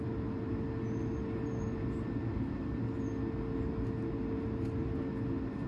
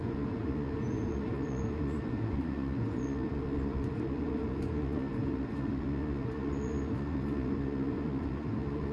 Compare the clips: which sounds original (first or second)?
first